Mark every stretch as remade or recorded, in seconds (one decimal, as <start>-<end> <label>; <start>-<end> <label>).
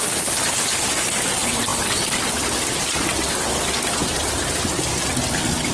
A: 0.0-5.7 recorded